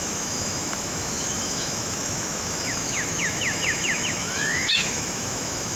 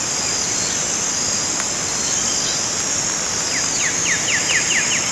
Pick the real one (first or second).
second